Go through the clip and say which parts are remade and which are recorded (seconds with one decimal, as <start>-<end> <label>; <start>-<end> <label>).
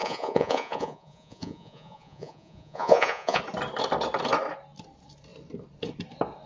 0.0-3.4 remade; 3.4-6.5 recorded